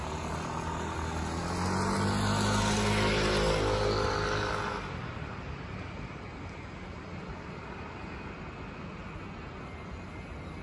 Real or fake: real